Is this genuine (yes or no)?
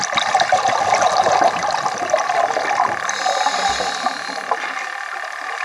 yes